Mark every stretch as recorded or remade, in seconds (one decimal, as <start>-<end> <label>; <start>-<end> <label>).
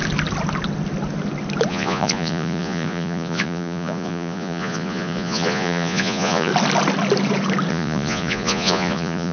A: 0.0-1.7 recorded; 1.7-6.5 remade; 6.5-7.7 recorded; 7.7-9.3 remade